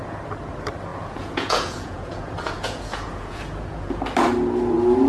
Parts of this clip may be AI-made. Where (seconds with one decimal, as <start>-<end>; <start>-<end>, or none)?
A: 0.9-4.0

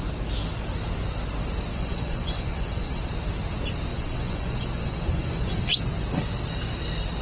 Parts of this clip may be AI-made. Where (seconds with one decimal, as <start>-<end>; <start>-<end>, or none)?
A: 1.7-3.0; 3.9-5.8

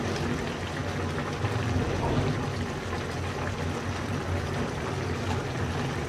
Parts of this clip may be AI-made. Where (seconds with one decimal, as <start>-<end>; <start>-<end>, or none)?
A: none

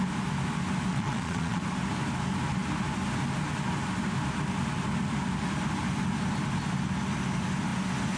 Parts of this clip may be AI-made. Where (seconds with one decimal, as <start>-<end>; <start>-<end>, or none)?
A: 0.9-1.6

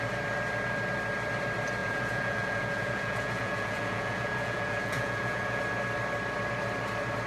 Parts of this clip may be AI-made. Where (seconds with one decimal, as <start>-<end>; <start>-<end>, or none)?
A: 1.8-5.6

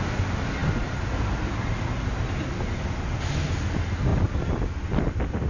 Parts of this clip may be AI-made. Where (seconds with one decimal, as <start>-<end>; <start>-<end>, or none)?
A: none